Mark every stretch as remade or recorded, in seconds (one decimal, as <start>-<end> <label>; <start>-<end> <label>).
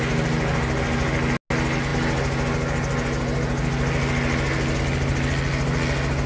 0.0-6.3 recorded